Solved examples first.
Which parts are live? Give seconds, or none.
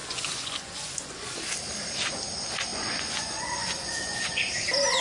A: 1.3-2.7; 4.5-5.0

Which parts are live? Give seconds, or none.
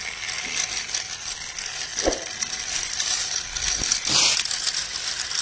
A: 0.0-5.4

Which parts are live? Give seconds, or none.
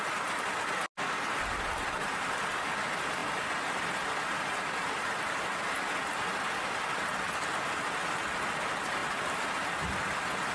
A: 0.0-10.5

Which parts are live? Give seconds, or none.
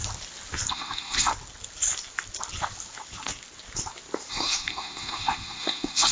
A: 0.0-0.7; 1.3-4.3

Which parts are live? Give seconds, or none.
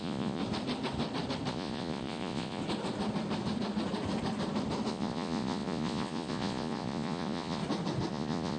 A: 0.4-1.5; 2.6-4.9; 7.6-8.1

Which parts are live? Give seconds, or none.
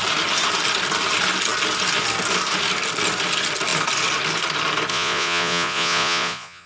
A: 0.0-4.9